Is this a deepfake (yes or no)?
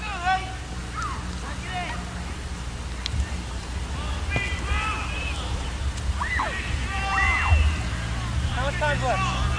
no